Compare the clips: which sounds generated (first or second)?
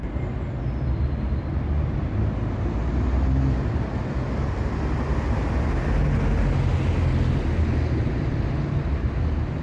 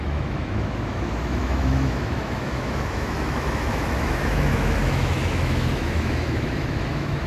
second